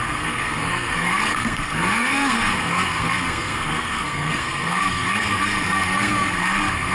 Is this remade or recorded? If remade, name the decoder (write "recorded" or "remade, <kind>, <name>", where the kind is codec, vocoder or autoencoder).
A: remade, codec, SNAC